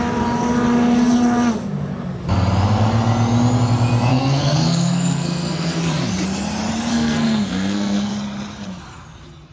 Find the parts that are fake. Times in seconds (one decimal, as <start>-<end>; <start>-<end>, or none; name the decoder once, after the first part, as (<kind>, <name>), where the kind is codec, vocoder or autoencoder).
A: 4.1-5.9 (codec, SNAC); 6.9-8.1